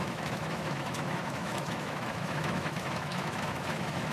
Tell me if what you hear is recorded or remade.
remade